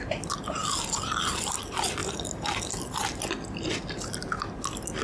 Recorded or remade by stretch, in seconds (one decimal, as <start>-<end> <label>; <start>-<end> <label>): 0.0-5.0 recorded